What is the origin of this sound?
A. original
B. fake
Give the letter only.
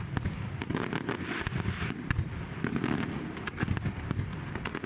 A